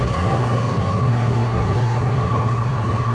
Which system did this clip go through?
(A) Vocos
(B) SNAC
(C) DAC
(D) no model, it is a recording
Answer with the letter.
B